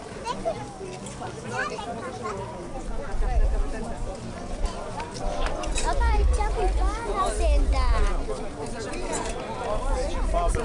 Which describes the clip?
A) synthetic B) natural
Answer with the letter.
B